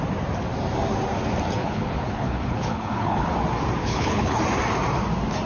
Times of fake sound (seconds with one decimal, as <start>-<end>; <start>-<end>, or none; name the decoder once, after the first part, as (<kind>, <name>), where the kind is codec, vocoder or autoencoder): 1.6-3.3 (codec, HILCodec); 3.8-4.4